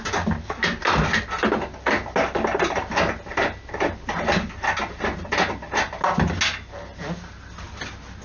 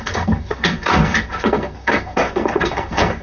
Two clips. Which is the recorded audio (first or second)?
first